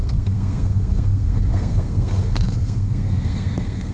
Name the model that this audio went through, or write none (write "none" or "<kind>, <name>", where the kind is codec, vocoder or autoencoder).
codec, SNAC